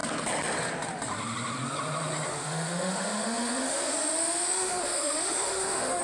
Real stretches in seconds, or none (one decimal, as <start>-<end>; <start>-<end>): 0.0-2.3